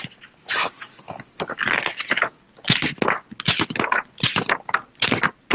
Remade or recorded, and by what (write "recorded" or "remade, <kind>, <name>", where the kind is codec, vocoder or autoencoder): recorded